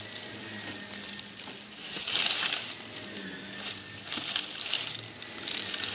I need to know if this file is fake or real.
real